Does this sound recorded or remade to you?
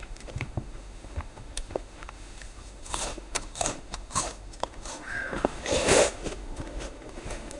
remade